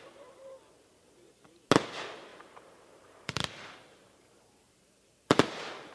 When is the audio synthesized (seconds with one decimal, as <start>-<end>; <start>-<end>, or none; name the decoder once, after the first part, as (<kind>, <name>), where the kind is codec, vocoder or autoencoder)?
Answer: 2.3-5.9 (vocoder, BigVGAN v2)